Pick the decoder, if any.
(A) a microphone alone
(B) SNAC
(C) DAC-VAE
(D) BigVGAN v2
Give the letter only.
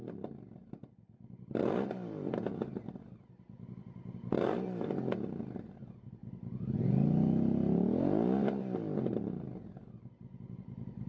A